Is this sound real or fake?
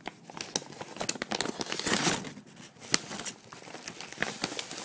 real